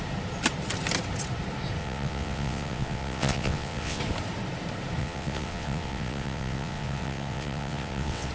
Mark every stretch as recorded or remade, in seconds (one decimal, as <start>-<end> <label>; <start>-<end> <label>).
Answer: 0.0-1.8 recorded; 1.8-4.0 remade; 4.0-5.0 recorded; 5.0-8.3 remade